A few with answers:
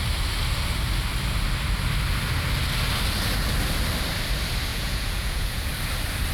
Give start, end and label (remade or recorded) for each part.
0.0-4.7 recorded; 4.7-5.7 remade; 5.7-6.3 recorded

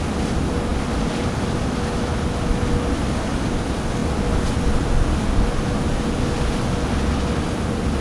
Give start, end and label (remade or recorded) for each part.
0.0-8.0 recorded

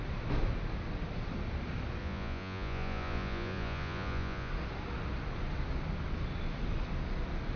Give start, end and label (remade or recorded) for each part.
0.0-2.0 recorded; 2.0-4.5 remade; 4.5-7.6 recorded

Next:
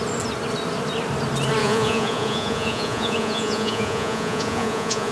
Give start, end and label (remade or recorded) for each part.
0.0-1.6 recorded; 1.6-5.1 remade

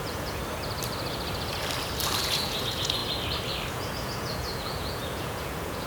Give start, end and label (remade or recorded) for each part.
0.0-0.4 remade; 0.4-2.2 recorded; 2.2-3.0 remade; 3.0-3.7 recorded; 3.7-5.9 remade

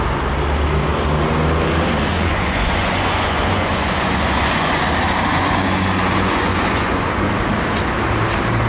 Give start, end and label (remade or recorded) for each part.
0.0-2.1 recorded; 2.1-4.8 remade; 4.8-5.3 recorded; 5.3-7.3 remade; 7.3-8.7 recorded